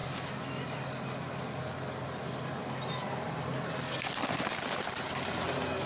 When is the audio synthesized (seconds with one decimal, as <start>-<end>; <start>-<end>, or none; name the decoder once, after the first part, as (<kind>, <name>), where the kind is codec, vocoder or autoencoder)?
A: none